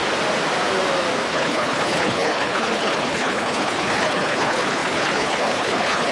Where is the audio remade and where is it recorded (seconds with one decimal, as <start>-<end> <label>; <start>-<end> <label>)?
0.0-1.3 recorded; 1.3-6.1 remade